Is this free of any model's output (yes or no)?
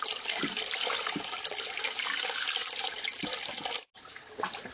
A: yes